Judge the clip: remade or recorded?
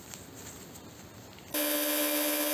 recorded